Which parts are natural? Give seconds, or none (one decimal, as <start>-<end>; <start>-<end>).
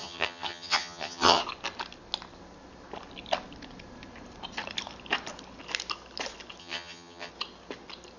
1.4-6.6; 7.3-8.2